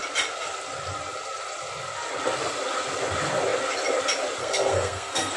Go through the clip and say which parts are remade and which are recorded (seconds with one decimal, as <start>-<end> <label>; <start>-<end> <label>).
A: 0.0-4.4 recorded; 4.4-5.4 remade